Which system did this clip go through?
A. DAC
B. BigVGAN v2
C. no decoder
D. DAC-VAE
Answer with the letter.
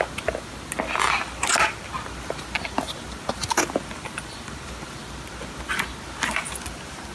C